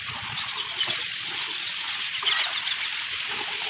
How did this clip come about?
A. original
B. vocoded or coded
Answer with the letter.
A